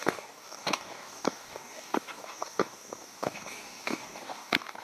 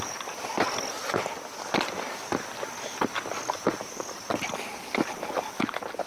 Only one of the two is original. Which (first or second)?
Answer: second